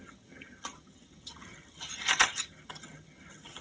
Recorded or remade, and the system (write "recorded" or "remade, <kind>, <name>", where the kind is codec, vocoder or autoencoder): remade, vocoder, HiFi-GAN